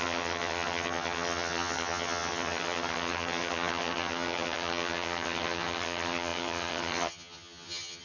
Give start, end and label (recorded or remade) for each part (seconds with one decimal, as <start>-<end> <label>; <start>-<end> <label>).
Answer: 0.0-8.0 remade